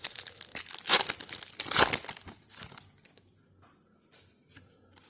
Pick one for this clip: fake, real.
real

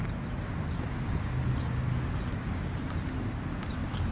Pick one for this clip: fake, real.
real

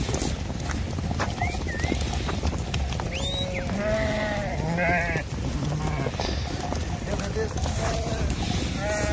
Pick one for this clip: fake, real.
real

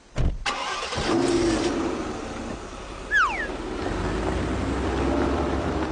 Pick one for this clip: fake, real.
real